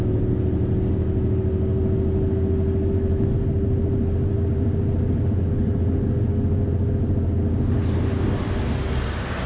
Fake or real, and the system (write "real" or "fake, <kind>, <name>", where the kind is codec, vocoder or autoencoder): real